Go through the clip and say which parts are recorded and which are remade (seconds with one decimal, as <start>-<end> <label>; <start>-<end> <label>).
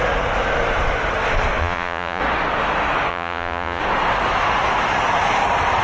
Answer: 0.0-1.6 recorded; 1.6-2.2 remade; 2.2-3.1 recorded; 3.1-3.8 remade; 3.8-5.8 recorded